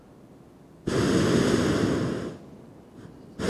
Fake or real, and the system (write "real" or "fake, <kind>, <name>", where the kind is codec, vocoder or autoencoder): real